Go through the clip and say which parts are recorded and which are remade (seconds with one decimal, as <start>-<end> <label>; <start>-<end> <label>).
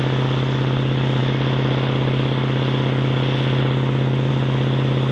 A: 0.0-5.1 recorded